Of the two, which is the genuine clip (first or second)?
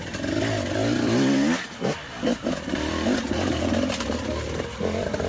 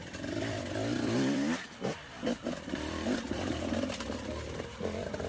first